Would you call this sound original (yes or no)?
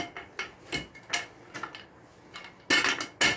yes